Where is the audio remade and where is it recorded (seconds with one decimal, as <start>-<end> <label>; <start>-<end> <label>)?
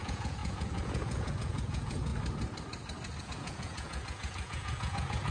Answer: 0.0-2.1 remade; 2.1-3.2 recorded; 3.2-5.3 remade